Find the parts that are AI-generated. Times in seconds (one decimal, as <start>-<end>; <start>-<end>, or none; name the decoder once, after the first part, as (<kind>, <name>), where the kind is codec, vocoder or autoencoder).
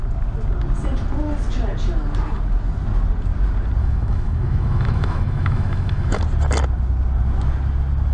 3.8-6.2 (autoencoder, DAC-VAE)